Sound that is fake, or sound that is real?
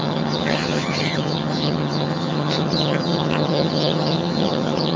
fake